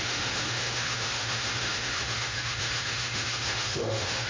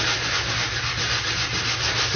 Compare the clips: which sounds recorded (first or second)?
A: second